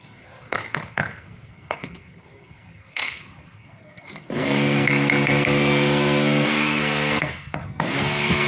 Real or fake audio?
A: fake